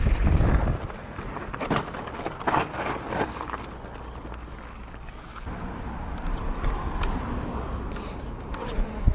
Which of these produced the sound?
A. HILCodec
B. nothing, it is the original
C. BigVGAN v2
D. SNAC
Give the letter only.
B